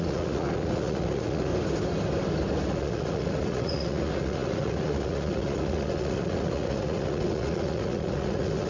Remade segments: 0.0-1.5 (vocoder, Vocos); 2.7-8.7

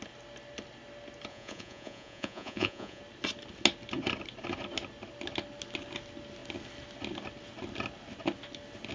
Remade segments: 1.3-3.0 (vocoder, Vocos)

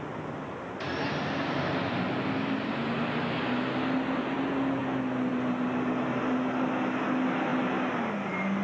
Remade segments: none

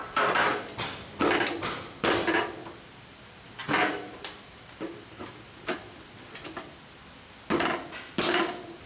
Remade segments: none

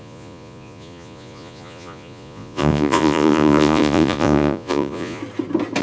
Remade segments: 0.0-5.2 (vocoder, Vocos)